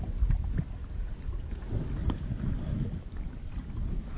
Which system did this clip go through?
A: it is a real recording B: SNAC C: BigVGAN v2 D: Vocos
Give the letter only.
A